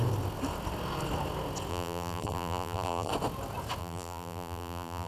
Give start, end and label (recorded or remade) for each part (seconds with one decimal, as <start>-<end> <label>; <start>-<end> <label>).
0.0-1.7 recorded; 1.7-3.1 remade; 3.1-3.8 recorded; 3.8-5.1 remade